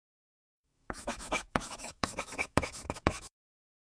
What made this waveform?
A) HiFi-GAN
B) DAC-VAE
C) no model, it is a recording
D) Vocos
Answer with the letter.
B